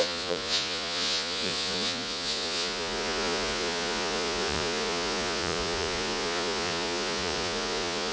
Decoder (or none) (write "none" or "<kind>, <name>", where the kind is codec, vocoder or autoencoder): vocoder, Vocos